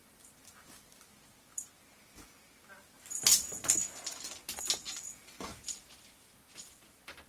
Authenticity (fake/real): real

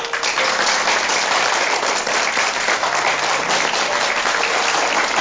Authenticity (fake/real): real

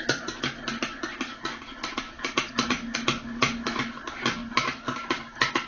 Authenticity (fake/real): real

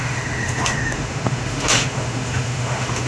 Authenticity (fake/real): fake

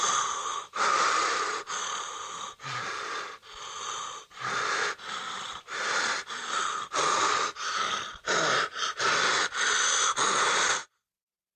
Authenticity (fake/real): fake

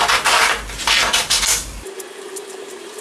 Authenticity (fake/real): real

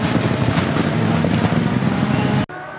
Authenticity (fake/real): real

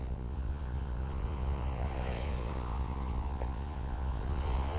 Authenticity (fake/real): fake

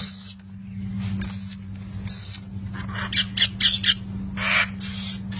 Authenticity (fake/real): real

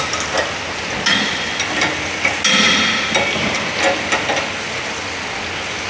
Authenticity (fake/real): real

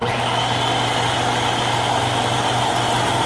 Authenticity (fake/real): real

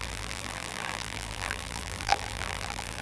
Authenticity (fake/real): fake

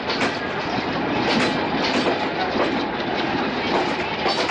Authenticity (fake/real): real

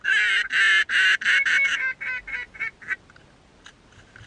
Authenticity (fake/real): real